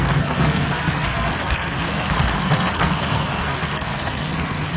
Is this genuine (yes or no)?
no